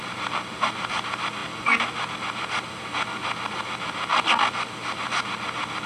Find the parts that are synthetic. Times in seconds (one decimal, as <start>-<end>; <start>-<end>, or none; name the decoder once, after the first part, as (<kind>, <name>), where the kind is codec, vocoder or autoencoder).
none